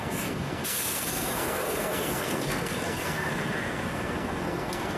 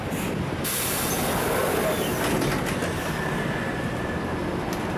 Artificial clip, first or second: first